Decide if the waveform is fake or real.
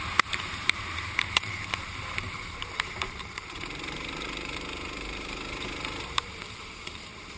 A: fake